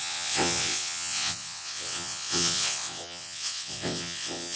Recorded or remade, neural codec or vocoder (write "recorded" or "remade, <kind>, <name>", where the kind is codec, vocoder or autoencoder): remade, vocoder, WaveNeXt